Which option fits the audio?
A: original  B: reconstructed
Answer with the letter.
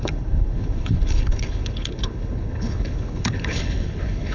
B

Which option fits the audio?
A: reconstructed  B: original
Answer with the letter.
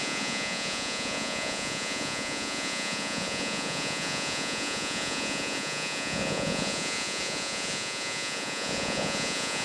A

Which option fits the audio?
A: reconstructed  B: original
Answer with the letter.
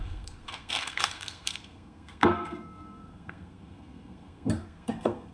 A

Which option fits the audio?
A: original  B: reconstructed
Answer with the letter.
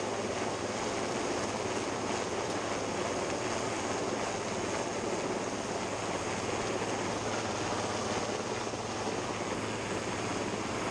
A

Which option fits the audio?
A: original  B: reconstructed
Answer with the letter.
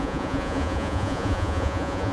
B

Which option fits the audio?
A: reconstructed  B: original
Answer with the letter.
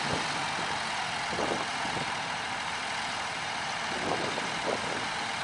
B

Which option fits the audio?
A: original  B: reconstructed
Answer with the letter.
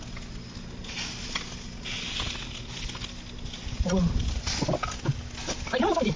A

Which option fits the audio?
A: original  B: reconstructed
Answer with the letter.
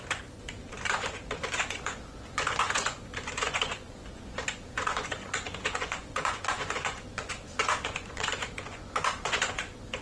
B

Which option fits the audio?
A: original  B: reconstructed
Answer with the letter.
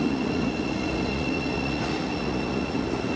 B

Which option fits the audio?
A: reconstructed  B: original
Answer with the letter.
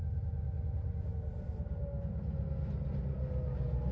B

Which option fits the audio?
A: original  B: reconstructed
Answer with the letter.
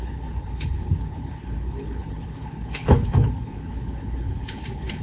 B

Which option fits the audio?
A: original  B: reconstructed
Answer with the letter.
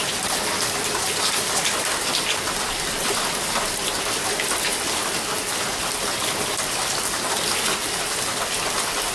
A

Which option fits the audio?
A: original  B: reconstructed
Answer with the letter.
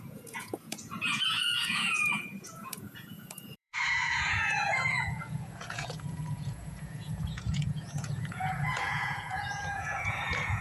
B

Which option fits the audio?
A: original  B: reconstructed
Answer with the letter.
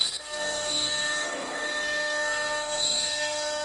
B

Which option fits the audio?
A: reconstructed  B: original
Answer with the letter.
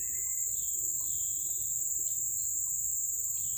B